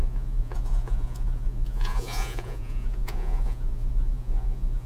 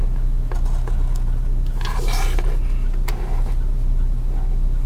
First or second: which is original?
second